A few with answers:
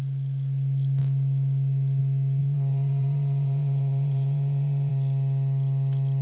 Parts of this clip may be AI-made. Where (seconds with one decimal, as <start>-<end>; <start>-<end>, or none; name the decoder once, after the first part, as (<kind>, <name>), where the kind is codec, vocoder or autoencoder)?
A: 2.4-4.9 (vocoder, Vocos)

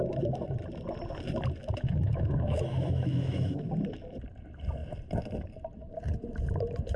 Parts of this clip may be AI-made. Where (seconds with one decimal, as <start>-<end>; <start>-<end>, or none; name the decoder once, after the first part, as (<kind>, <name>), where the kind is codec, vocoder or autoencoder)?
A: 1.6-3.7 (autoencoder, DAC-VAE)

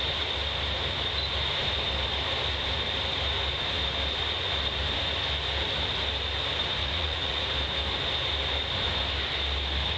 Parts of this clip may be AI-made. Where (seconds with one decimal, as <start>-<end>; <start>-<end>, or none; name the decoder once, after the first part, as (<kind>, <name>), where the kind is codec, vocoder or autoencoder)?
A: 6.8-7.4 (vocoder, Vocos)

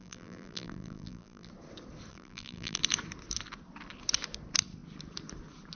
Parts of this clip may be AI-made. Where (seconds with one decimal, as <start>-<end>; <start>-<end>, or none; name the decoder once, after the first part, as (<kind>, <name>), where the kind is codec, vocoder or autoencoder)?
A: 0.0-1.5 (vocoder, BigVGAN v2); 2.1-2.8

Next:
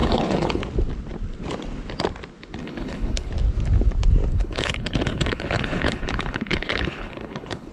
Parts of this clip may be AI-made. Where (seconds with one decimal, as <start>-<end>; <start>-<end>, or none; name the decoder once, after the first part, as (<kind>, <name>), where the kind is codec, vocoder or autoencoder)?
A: 0.0-0.6 (codec, HILCodec); 2.6-3.3; 4.3-7.7

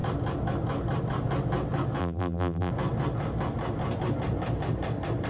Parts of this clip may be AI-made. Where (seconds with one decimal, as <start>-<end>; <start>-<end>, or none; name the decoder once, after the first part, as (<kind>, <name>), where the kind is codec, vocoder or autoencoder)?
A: 2.0-2.7 (vocoder, BigVGAN v2)

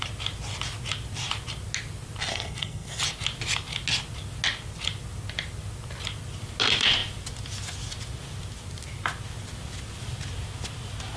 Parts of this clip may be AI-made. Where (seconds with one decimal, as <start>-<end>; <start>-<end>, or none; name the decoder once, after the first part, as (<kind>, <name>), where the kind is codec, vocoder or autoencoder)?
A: 2.3-3.0 (codec, SNAC)